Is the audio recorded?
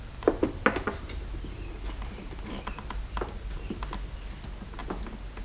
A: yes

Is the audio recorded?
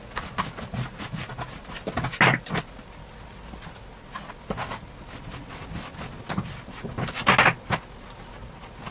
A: yes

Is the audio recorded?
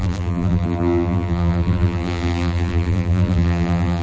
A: no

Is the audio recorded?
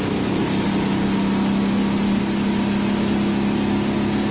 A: yes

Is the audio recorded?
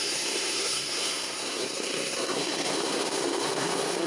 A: no